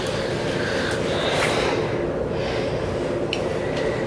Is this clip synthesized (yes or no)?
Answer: no